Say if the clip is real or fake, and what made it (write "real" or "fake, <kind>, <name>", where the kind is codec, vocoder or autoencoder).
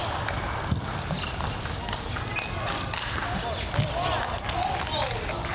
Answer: real